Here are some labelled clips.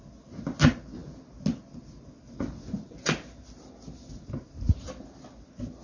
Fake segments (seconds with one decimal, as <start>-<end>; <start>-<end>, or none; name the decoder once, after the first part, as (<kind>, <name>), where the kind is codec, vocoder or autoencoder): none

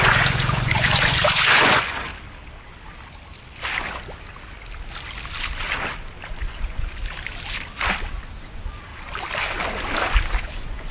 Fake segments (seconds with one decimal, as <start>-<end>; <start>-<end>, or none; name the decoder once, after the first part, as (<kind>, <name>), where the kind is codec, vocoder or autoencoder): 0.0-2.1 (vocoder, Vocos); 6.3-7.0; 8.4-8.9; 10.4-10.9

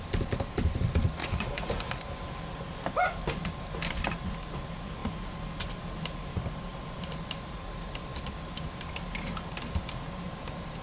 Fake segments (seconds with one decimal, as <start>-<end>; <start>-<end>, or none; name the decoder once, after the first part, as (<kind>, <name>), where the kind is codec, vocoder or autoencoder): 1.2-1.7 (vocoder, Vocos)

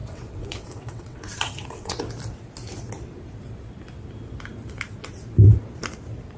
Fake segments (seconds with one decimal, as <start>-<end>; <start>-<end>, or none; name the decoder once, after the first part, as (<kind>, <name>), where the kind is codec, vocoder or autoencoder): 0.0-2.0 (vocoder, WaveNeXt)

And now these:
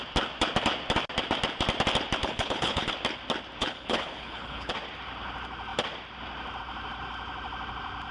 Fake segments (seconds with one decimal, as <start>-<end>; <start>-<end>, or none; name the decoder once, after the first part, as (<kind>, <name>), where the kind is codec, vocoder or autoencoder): 2.2-2.9 (codec, HILCodec); 3.6-4.7

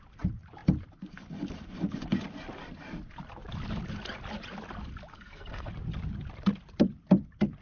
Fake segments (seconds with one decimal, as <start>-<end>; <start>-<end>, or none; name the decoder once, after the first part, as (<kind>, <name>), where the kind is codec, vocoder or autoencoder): 5.1-5.7 (codec, SNAC)

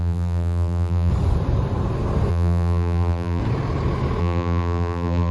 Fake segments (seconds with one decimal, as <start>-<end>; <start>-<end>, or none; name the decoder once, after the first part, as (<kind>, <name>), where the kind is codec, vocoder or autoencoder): 0.0-1.1 (vocoder, BigVGAN v2); 2.3-3.4; 4.2-5.3

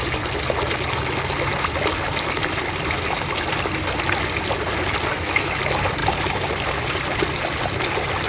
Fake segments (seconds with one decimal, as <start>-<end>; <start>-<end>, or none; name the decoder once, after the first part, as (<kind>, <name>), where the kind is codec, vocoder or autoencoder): 5.1-5.6 (autoencoder, DAC-VAE)